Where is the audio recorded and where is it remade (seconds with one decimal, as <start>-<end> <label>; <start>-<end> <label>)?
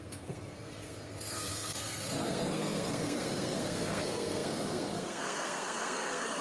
0.0-6.4 remade